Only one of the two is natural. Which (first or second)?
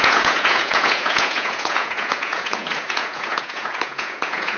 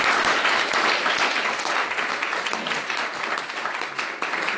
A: second